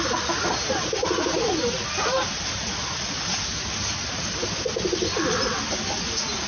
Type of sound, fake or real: real